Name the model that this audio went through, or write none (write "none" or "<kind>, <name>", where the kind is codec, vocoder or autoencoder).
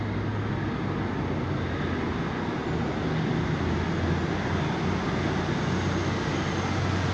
none